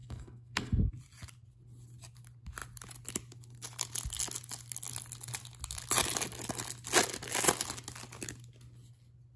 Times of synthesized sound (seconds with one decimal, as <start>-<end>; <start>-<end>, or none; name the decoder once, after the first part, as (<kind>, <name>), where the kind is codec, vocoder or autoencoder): 0.0-0.9 (codec, SNAC)